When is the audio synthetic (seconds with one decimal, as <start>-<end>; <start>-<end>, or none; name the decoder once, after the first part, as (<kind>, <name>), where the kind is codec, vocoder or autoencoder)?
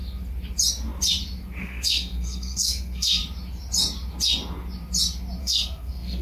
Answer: 1.6-3.2 (codec, SNAC); 5.4-6.2